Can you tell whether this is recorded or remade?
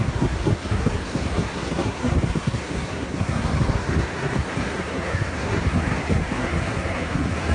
remade